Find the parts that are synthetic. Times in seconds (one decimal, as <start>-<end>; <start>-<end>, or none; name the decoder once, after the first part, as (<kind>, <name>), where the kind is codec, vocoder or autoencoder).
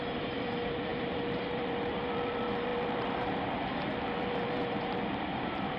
0.0-5.8 (vocoder, BigVGAN v2)